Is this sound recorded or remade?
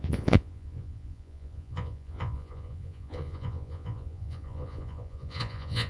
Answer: remade